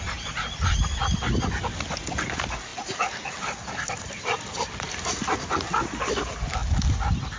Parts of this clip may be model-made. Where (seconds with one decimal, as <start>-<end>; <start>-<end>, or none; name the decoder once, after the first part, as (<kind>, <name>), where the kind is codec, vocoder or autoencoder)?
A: 0.0-0.9 (vocoder, BigVGAN v2); 2.7-5.0